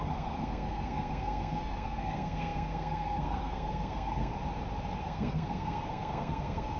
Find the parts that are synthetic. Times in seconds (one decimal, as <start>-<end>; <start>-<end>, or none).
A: 0.0-4.3; 5.0-6.8